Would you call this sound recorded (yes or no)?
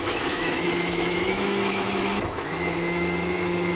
no